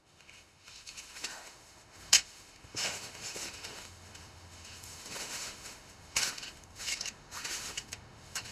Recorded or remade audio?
remade